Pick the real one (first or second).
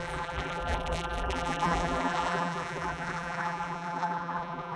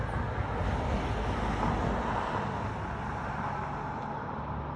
second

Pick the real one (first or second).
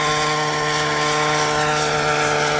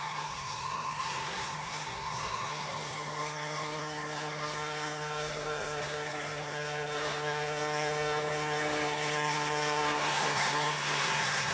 first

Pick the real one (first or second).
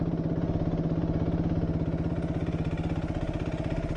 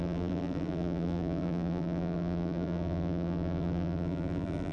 first